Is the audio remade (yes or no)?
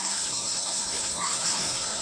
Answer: yes